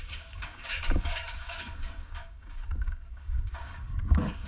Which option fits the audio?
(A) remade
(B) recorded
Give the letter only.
A